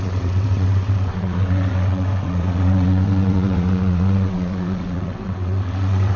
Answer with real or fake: fake